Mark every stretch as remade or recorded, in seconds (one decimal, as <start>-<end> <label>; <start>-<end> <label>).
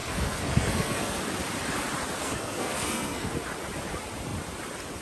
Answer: 0.0-1.2 remade; 1.2-2.2 recorded; 2.2-3.3 remade; 3.3-5.0 recorded